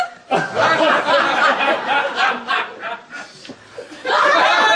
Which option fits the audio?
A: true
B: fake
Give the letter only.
A